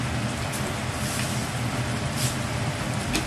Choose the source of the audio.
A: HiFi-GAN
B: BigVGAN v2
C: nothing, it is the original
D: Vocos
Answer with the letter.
B